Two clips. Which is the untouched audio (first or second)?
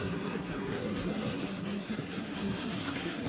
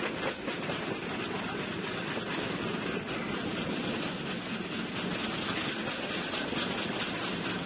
second